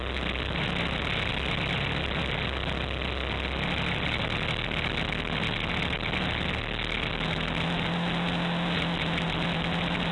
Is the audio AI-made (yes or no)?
no